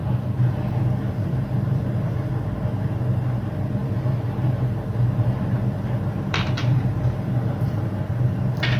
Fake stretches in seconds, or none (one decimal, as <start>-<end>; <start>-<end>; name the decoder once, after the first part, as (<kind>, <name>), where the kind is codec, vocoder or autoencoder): 0.0-2.3 (vocoder, BigVGAN v2); 3.8-7.7